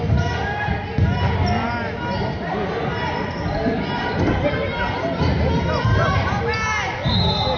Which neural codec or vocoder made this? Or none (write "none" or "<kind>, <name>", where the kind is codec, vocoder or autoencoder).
none